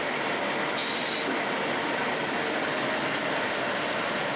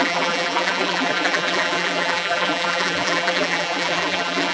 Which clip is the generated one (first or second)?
second